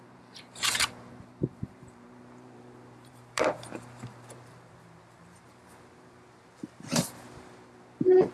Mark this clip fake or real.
fake